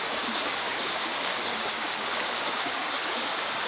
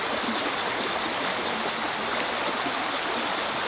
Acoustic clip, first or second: second